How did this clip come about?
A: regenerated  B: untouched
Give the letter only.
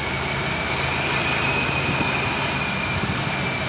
B